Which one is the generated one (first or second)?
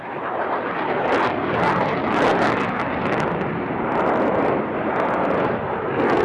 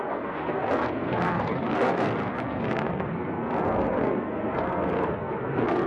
second